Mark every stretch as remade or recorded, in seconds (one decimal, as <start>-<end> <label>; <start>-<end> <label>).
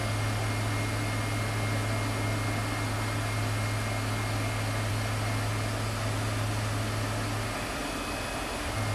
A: 0.0-8.9 recorded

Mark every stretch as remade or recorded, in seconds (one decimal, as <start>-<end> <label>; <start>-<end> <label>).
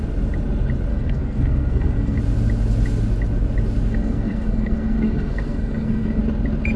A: 0.0-0.9 recorded; 0.9-2.2 remade; 2.2-3.9 recorded; 3.9-6.2 remade; 6.2-6.8 recorded